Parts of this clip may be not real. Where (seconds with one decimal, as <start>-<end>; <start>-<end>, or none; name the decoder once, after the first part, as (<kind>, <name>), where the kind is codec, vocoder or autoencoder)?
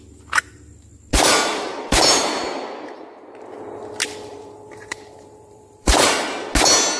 1.5-2.4 (vocoder, BigVGAN v2); 4.3-6.1